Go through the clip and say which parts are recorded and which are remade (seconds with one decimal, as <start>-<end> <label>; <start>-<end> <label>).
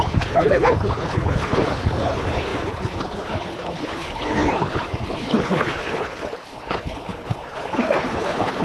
0.0-8.6 remade